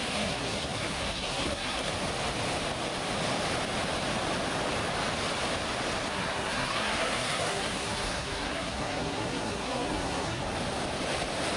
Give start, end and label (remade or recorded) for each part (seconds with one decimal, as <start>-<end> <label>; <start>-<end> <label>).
0.0-1.9 remade; 1.9-6.1 recorded; 6.1-10.4 remade; 10.4-11.6 recorded